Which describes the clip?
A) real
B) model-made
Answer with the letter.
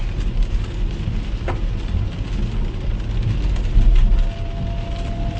A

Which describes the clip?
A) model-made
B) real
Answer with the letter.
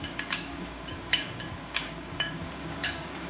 A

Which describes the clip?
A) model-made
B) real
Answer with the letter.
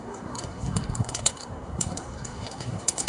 A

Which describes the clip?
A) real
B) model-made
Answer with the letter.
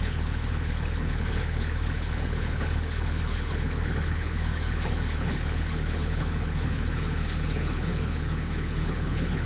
B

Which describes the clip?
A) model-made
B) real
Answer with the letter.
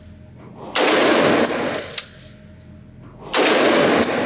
B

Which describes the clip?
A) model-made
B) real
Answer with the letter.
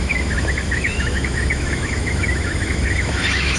A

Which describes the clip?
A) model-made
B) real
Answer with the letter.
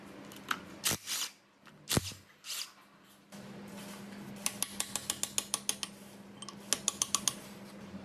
B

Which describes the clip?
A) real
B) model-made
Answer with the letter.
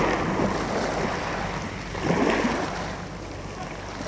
A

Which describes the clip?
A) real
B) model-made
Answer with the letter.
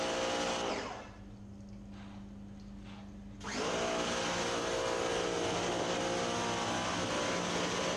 A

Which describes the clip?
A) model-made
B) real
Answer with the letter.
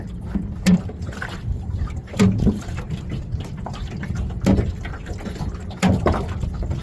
A